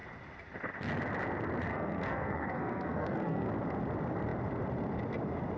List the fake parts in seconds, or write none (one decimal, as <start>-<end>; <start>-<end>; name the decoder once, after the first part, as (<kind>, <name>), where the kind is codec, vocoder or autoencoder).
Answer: 1.7-3.5 (codec, SNAC)